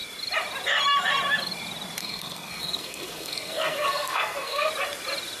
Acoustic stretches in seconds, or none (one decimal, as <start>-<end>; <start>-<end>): 0.0-2.0; 4.7-5.4